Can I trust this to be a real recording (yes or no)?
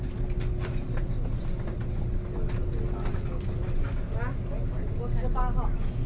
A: yes